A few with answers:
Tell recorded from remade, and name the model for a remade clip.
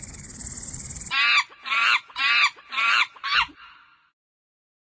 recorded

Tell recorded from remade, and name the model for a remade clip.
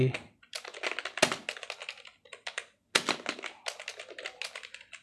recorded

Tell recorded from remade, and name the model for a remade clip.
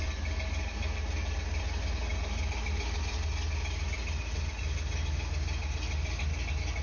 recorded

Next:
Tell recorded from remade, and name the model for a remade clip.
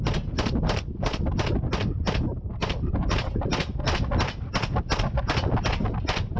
recorded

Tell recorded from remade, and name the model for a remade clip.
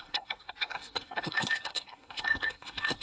remade, codec, SNAC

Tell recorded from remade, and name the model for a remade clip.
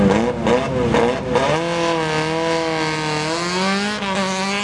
recorded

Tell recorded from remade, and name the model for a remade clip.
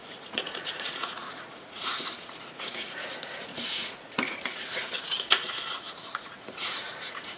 remade, vocoder, Vocos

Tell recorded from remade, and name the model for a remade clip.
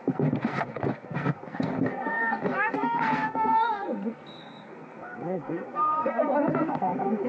remade, codec, SNAC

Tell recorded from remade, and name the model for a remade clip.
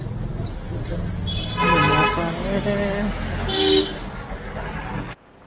recorded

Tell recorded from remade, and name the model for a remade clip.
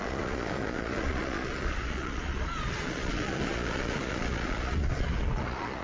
remade, vocoder, Vocos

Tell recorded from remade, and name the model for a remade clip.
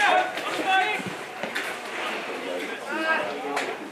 recorded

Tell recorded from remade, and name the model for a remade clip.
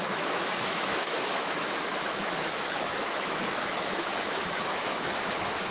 remade, autoencoder, DAC-VAE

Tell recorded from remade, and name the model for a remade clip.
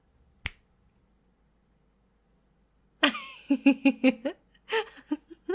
recorded